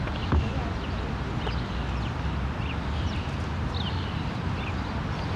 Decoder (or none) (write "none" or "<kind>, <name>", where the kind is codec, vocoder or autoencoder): none